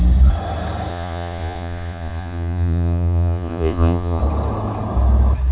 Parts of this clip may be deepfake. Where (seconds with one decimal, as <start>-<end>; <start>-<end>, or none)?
0.9-4.2